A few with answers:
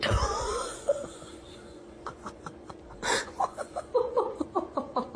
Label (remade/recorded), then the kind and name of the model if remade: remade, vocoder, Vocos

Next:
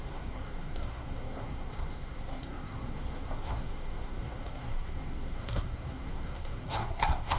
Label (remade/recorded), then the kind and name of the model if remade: remade, codec, SNAC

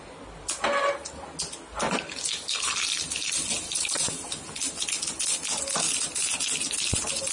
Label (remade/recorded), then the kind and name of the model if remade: recorded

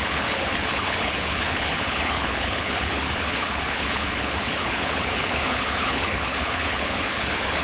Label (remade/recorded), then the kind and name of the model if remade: remade, codec, HILCodec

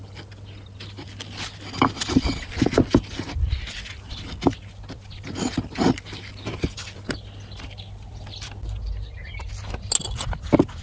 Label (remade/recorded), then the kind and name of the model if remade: recorded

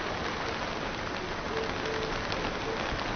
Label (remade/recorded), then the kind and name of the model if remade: recorded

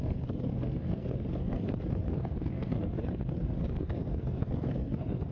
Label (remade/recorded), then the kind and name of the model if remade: remade, codec, SNAC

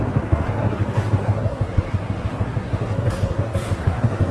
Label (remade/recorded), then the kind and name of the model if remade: remade, codec, SNAC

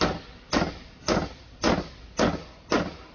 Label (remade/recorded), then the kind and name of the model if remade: recorded